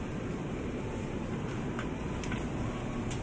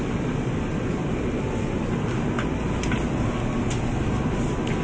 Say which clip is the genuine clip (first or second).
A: second